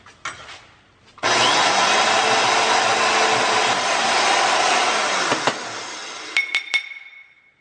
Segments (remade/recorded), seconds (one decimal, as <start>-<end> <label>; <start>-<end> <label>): 0.0-7.6 recorded